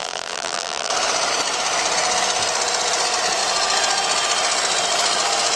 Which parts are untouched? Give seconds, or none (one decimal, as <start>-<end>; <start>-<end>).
0.9-5.6